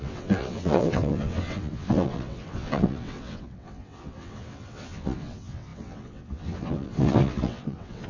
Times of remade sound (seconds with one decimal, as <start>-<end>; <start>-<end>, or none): 0.0-8.1